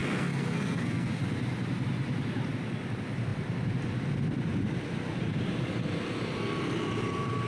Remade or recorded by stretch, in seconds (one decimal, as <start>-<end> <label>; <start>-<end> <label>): 0.0-1.2 remade; 1.2-7.5 recorded